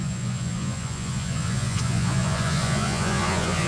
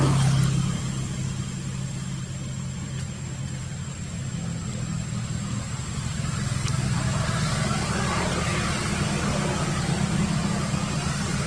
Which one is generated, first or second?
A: first